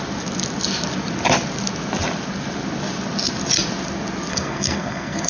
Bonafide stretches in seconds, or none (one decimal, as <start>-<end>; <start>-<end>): 0.0-4.3